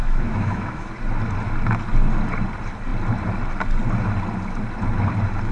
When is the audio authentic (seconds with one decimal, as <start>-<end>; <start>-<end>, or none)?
0.9-5.5